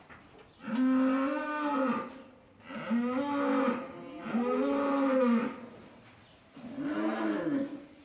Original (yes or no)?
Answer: yes